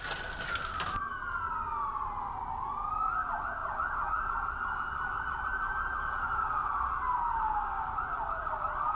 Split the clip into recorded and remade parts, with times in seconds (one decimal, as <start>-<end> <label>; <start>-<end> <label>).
0.0-8.9 recorded